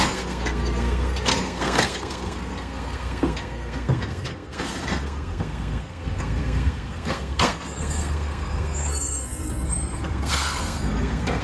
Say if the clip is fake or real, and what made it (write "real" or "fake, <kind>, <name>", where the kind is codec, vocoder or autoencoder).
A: fake, codec, SNAC